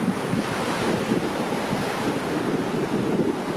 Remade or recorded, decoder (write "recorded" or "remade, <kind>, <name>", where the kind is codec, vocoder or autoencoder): recorded